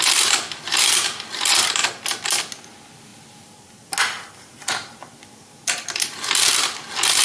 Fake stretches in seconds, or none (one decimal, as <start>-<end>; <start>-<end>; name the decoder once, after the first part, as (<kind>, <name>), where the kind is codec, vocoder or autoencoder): none